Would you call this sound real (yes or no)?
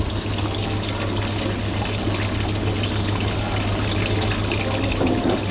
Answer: yes